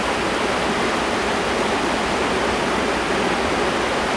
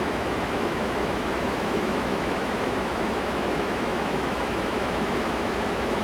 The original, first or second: first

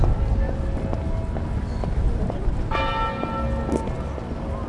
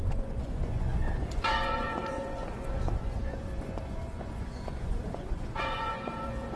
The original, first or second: first